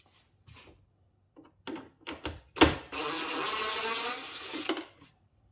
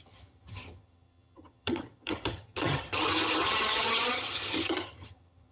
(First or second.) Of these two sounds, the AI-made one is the second